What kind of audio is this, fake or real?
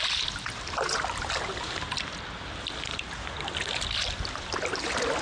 real